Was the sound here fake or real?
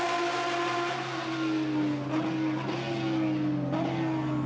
real